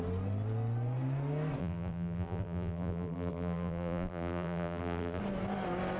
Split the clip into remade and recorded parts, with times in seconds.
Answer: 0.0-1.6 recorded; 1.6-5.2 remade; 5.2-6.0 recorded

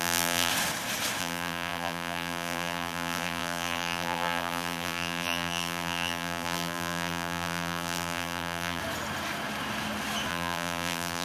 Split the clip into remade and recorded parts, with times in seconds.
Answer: 0.0-0.5 remade; 0.5-1.2 recorded; 1.2-8.8 remade; 8.8-10.3 recorded; 10.3-11.2 remade